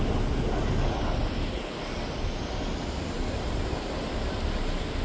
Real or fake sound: real